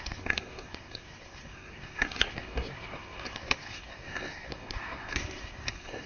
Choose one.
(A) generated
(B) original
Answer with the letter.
A